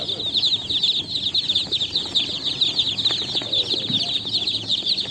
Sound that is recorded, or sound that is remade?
recorded